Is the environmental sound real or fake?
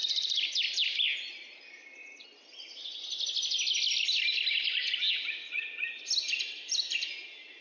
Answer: real